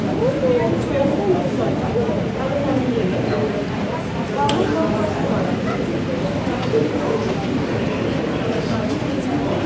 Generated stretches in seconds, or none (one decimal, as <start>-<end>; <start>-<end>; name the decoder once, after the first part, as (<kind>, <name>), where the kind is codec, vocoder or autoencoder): 7.7-8.3 (vocoder, BigVGAN v2)